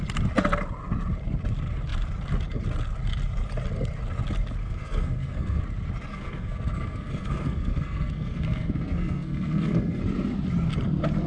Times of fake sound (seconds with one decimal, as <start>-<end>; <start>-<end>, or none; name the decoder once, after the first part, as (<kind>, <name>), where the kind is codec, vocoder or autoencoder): 4.6-5.6 (codec, SNAC); 6.1-10.0